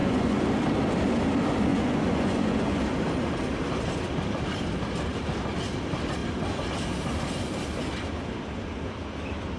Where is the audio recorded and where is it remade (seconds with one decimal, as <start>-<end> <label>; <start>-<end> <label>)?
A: 0.0-0.5 remade; 0.5-1.7 recorded; 1.7-2.8 remade; 2.8-9.6 recorded